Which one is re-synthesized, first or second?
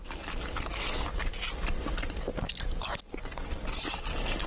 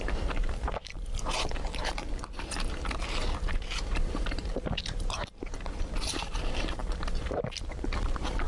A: second